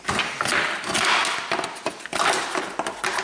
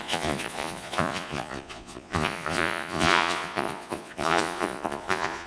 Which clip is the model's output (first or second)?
second